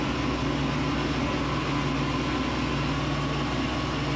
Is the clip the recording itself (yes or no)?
yes